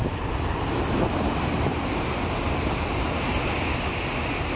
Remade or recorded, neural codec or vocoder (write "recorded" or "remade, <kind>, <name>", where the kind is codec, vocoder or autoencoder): recorded